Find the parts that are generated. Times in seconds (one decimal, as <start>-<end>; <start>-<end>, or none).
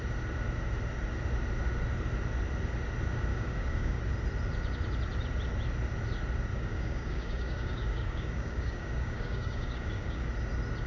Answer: 3.3-4.0; 6.5-10.3